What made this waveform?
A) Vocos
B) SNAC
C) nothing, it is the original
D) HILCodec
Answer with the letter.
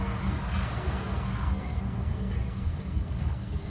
B